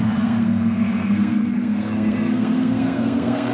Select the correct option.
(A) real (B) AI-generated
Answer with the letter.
B